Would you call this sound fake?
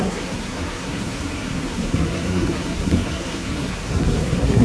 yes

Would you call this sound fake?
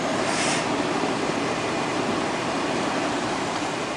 yes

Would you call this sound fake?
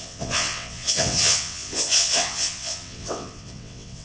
yes